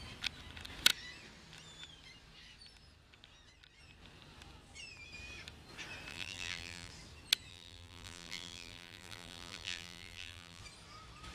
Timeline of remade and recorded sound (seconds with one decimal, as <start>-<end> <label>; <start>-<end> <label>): 0.0-6.1 recorded; 6.1-6.9 remade; 6.9-7.5 recorded; 7.5-10.6 remade; 10.6-11.3 recorded